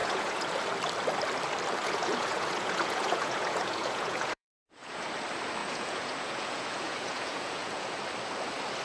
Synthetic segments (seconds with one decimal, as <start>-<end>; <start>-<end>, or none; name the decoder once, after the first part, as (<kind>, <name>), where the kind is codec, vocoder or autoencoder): 0.0-0.6 (vocoder, Vocos); 1.8-5.1; 5.6-8.0